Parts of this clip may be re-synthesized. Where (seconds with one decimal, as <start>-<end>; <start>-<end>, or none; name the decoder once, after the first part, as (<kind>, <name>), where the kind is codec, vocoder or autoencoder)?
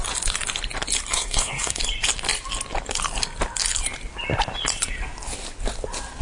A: 1.1-1.8 (codec, SNAC)